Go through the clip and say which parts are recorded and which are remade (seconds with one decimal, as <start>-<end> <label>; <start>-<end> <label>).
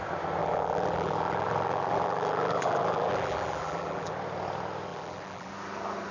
0.0-0.4 recorded; 0.4-4.1 remade; 4.1-4.9 recorded; 4.9-5.5 remade; 5.5-6.1 recorded